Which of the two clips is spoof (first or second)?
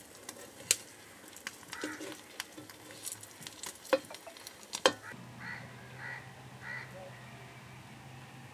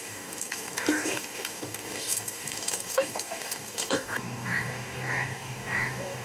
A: second